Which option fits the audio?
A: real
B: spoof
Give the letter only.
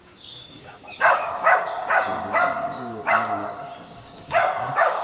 B